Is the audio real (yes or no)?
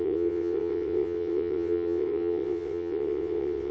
no